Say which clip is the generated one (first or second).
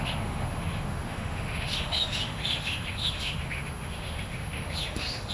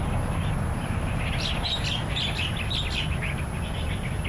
first